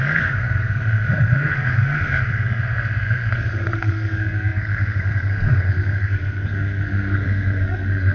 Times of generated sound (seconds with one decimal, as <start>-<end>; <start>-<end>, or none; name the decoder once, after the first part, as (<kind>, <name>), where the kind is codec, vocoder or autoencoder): 0.0-8.1 (codec, SNAC)

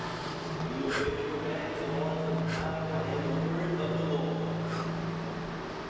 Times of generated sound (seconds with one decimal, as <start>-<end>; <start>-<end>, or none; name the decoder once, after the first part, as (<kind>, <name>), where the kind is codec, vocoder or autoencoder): none